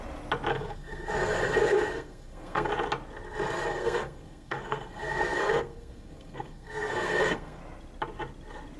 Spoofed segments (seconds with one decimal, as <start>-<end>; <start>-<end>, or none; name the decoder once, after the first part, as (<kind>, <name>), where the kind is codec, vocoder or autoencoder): 0.5-2.7 (codec, SNAC); 3.7-7.6